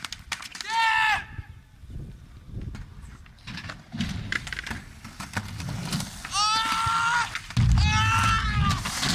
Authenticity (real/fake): real